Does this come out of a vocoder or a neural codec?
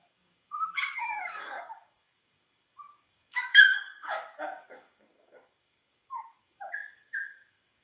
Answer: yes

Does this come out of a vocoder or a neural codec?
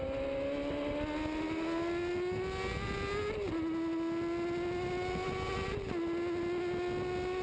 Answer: no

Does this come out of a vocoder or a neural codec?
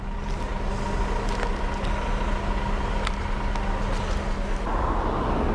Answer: no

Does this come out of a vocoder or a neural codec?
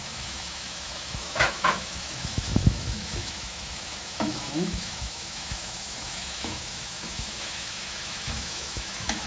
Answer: yes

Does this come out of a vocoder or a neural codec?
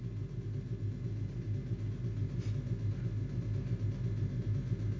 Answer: no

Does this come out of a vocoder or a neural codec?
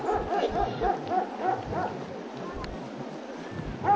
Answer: no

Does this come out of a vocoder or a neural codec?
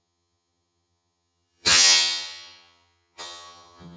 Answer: yes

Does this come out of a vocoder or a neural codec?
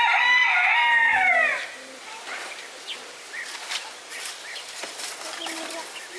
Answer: no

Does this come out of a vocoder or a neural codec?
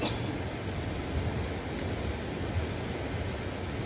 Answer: no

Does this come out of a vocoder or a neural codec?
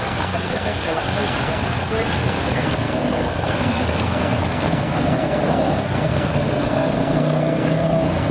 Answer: yes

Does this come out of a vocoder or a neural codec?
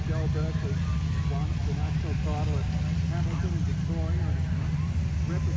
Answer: no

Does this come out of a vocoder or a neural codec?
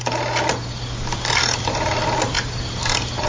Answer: no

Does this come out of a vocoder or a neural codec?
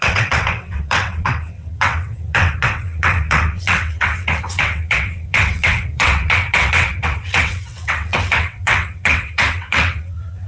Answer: yes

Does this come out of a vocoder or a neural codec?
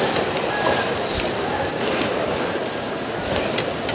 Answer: no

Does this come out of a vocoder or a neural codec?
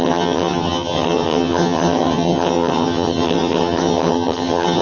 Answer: yes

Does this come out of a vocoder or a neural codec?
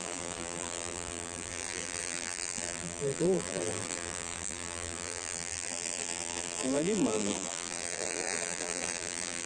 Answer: yes